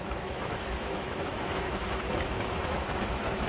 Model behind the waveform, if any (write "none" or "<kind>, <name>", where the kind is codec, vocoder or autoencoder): autoencoder, DAC-VAE